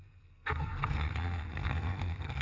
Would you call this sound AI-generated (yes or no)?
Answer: yes